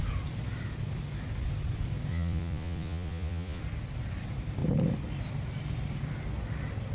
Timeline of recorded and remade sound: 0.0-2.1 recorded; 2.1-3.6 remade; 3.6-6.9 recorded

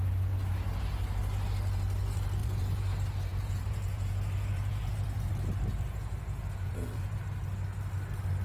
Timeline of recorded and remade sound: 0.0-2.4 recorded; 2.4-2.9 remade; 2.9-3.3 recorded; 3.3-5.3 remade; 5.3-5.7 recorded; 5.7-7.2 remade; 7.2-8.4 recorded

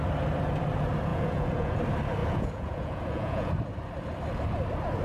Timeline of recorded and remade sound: 0.0-1.1 recorded; 1.1-1.8 remade; 1.8-2.2 recorded; 2.2-3.5 remade; 3.5-5.0 recorded

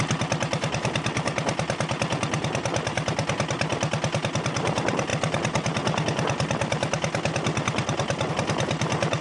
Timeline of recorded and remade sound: 0.0-9.2 recorded